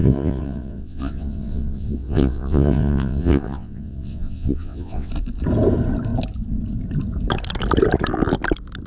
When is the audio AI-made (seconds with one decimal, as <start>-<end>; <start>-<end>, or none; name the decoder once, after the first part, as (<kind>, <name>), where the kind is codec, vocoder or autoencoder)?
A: 0.0-5.1 (vocoder, WaveNeXt)